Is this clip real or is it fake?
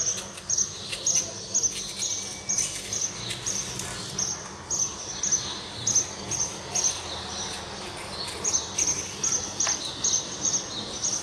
real